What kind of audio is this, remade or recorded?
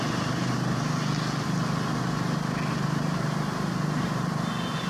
recorded